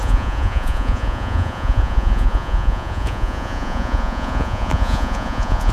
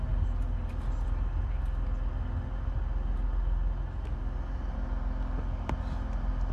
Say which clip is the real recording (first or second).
second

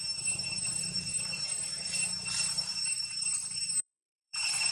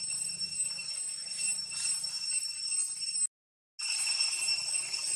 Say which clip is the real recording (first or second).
second